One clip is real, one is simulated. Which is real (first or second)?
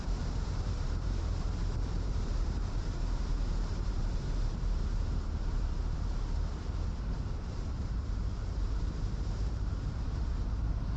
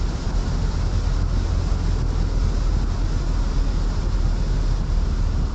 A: second